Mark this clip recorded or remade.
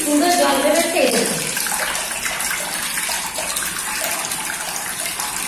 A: recorded